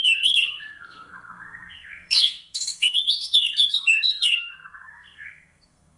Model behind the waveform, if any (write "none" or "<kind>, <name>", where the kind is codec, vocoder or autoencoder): codec, SNAC